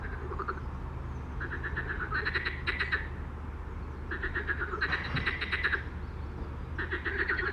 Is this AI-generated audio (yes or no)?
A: no